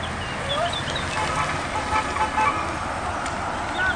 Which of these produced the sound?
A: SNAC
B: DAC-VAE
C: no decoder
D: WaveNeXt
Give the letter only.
C